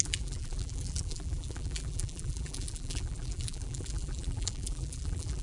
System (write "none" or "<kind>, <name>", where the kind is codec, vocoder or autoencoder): vocoder, BigVGAN v2